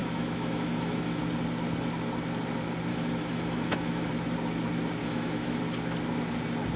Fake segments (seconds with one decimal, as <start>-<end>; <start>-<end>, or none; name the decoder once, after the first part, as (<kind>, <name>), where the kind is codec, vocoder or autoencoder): 0.0-1.2 (autoencoder, DAC-VAE); 2.9-4.1; 5.0-5.6